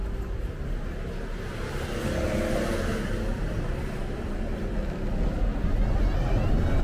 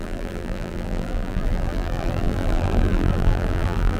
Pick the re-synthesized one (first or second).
second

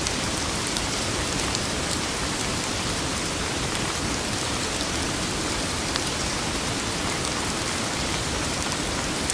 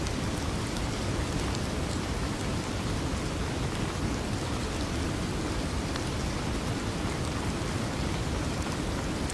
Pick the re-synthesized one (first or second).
first